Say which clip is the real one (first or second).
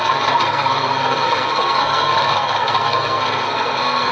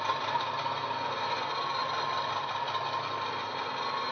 second